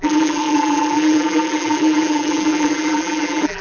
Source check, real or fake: fake